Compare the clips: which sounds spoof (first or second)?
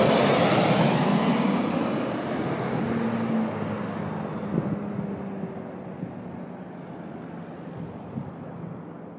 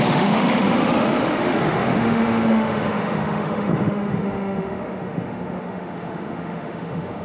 second